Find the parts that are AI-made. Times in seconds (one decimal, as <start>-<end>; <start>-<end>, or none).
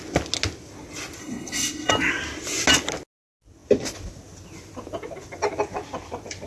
1.2-1.9